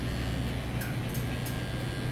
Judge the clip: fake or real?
real